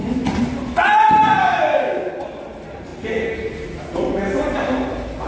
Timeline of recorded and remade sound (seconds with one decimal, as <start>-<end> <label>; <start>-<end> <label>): 0.0-1.4 recorded; 1.4-2.1 remade; 2.1-5.3 recorded